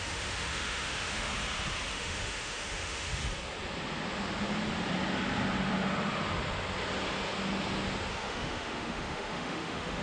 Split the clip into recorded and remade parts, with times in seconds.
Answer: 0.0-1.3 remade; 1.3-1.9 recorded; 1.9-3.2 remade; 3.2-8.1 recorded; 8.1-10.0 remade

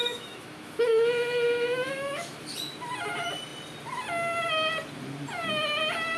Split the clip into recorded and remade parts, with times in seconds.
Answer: 0.0-2.4 remade; 2.4-6.2 recorded

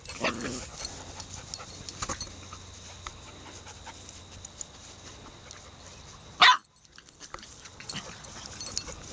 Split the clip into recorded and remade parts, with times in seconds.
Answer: 0.0-9.1 recorded